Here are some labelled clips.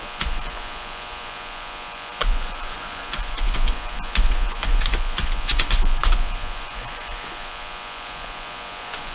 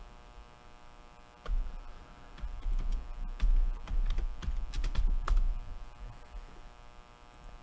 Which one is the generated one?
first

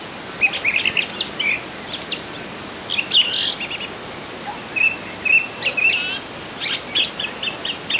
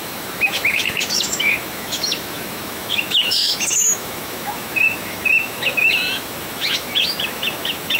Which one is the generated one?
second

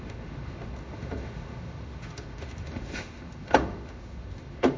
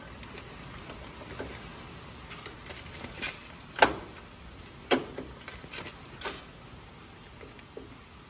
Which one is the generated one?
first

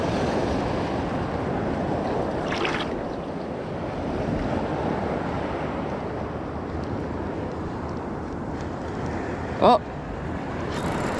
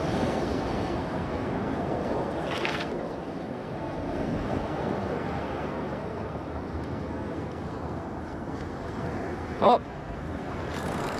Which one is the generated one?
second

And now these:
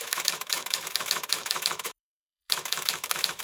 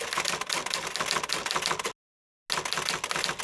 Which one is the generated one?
first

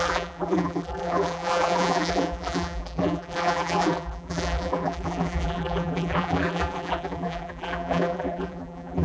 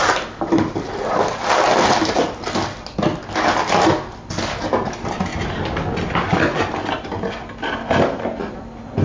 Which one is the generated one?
first